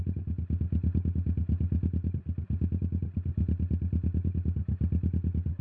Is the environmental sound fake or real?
real